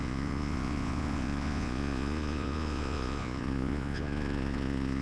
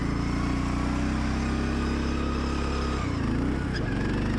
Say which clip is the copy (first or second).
first